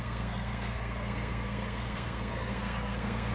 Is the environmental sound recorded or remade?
remade